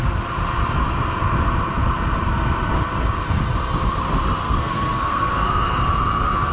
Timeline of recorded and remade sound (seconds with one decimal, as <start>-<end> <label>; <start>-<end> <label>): 0.0-4.4 recorded; 4.4-5.8 remade; 5.8-6.5 recorded